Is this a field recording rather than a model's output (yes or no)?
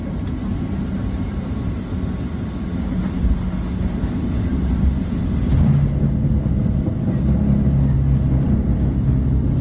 yes